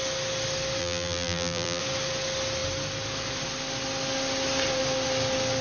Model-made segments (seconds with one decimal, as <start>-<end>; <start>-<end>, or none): 0.8-1.8